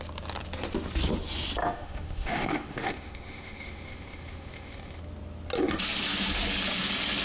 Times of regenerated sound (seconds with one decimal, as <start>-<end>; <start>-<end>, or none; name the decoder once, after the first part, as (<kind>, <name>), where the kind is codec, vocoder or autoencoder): 1.6-5.0 (autoencoder, DAC-VAE)